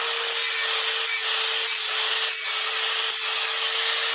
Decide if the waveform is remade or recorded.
recorded